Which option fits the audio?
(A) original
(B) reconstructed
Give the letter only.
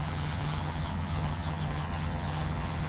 B